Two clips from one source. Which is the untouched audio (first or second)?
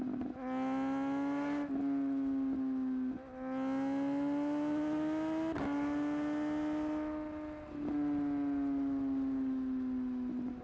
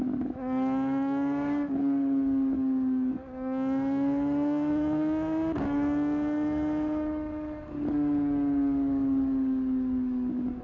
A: first